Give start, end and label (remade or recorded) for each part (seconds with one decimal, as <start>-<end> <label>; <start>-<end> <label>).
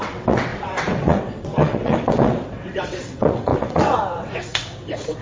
0.0-5.2 remade